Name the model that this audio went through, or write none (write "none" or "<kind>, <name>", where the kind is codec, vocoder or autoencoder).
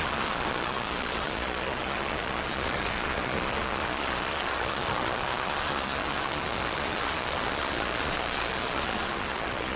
vocoder, Vocos